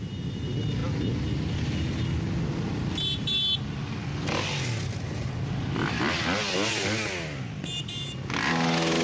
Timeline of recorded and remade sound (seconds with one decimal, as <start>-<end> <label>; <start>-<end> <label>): 0.0-9.0 recorded